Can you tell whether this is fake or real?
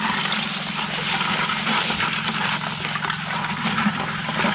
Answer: real